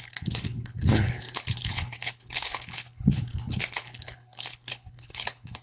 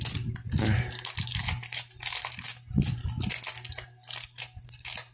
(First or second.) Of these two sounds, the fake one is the first